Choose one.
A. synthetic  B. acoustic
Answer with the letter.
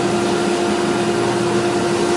B